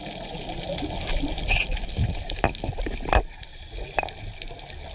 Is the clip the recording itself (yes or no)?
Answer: yes